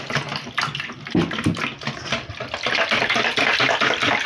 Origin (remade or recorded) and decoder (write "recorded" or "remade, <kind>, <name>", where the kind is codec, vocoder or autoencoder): recorded